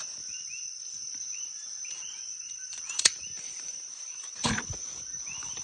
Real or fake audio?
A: fake